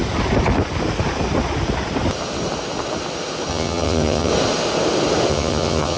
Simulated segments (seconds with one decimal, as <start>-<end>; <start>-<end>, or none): 3.5-4.3; 5.3-6.0